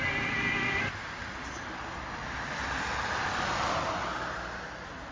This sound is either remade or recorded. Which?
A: recorded